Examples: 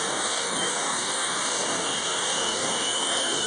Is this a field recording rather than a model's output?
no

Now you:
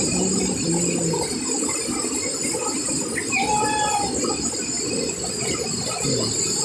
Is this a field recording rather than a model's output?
yes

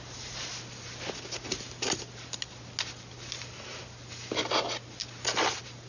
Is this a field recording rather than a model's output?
yes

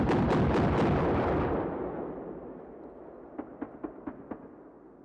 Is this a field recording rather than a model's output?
yes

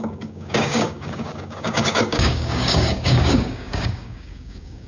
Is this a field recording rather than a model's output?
no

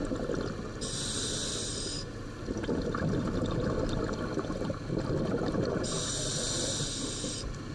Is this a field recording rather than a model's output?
yes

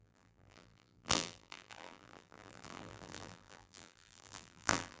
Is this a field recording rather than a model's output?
no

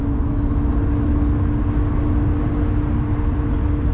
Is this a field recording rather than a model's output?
yes